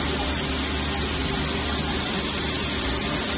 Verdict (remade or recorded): recorded